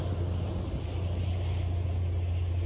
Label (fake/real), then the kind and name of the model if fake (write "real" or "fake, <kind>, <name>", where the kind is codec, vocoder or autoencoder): real